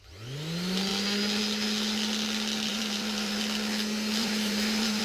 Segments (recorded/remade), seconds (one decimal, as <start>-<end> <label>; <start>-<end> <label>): 0.0-2.7 recorded; 2.7-3.4 remade; 3.4-4.2 recorded; 4.2-5.0 remade